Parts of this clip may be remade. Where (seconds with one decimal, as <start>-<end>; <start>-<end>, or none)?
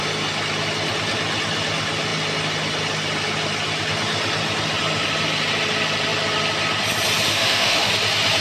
7.3-7.9